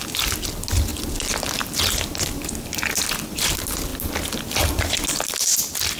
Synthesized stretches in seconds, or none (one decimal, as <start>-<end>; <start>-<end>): 0.9-2.1; 3.9-5.6